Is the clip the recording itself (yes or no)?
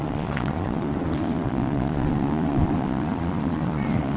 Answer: no